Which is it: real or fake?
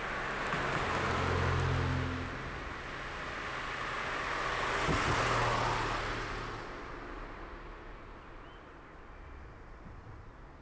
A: real